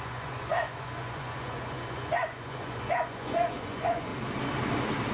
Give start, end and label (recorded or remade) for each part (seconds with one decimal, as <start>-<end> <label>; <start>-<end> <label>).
0.0-4.1 remade; 4.1-5.1 recorded